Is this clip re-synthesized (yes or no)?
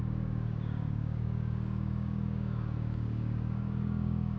yes